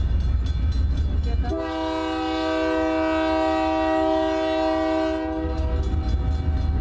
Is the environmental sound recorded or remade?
recorded